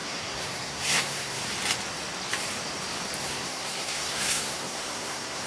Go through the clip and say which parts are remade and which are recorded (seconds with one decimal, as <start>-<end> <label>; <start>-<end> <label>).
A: 0.0-1.4 remade; 1.4-3.2 recorded; 3.2-5.5 remade